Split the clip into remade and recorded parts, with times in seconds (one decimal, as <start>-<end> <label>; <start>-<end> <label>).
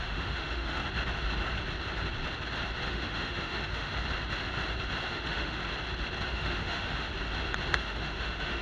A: 0.0-0.8 remade; 0.8-2.9 recorded; 2.9-3.9 remade; 3.9-5.1 recorded; 5.1-5.6 remade; 5.6-6.3 recorded; 6.3-7.1 remade; 7.1-7.7 recorded; 7.7-8.6 remade